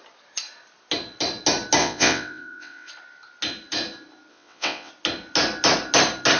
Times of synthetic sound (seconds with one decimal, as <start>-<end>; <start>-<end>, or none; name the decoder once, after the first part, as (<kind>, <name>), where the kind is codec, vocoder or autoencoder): 1.8-2.9 (vocoder, WaveNeXt); 4.3-4.9